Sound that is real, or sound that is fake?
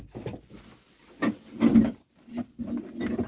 real